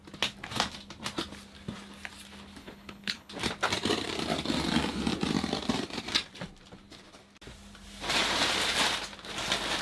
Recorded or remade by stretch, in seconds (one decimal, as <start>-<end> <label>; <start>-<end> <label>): 0.0-2.6 recorded; 2.6-3.3 remade; 3.3-9.8 recorded